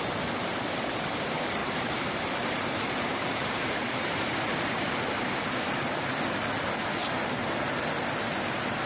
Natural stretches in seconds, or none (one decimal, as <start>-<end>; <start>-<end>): 0.0-1.6; 5.0-7.0; 7.5-8.9

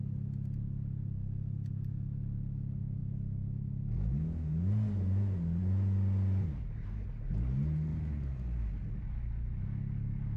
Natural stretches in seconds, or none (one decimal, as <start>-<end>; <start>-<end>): 0.0-10.4

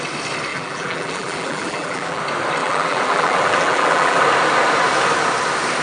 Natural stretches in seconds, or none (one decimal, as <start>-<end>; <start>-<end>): 0.0-0.5; 2.2-2.6; 4.2-5.8

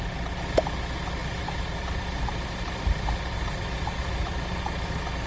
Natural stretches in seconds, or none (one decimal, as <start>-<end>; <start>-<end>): 0.0-1.2; 3.4-5.3

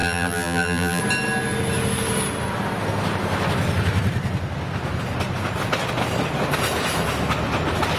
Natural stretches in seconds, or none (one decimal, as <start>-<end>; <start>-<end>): 1.0-8.0

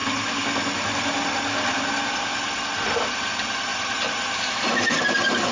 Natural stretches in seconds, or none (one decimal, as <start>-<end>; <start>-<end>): 0.0-3.7; 5.0-5.5

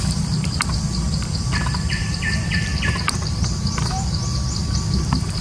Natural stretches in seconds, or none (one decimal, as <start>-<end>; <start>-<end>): none

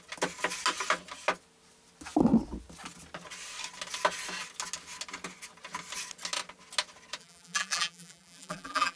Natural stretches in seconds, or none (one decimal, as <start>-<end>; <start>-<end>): 0.0-7.2